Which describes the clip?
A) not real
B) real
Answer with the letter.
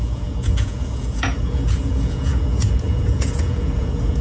A